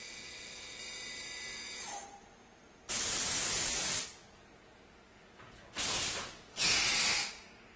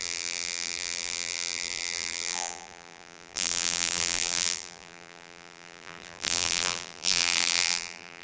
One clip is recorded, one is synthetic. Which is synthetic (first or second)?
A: second